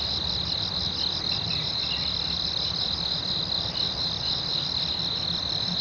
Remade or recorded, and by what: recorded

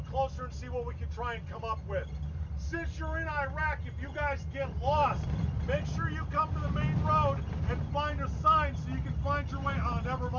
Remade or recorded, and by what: recorded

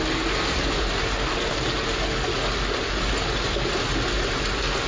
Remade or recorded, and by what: recorded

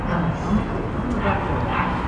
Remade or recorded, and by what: recorded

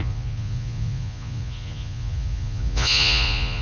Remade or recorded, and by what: remade, vocoder, Vocos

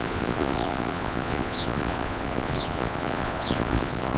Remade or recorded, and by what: remade, vocoder, Vocos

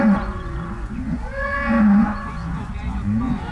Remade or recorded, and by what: remade, vocoder, Vocos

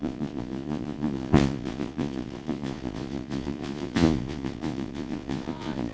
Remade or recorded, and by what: remade, vocoder, Vocos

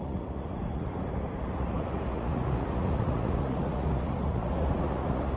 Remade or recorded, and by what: remade, vocoder, Vocos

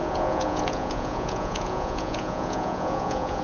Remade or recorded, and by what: remade, vocoder, Vocos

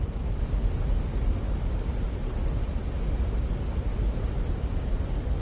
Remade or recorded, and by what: recorded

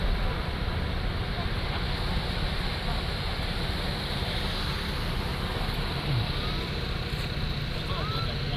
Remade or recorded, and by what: recorded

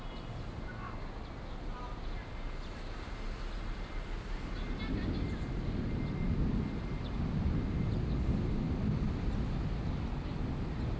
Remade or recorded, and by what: recorded